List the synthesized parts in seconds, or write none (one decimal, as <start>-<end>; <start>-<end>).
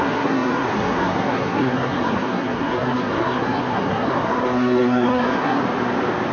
0.0-5.6